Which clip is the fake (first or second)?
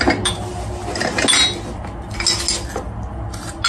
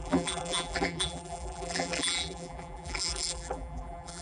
second